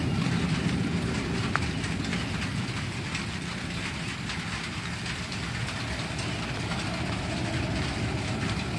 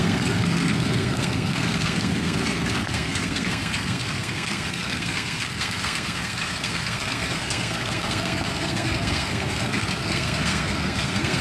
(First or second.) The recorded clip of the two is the first